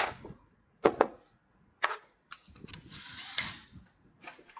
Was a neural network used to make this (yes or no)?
yes